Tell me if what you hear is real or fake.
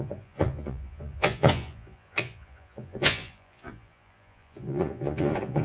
fake